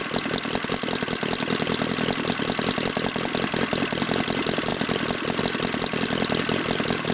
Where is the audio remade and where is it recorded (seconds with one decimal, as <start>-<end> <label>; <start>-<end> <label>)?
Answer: 0.0-7.1 recorded